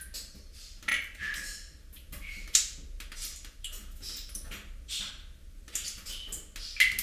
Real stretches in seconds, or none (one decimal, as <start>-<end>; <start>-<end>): 0.0-7.0